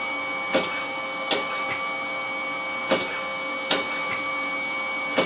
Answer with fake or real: real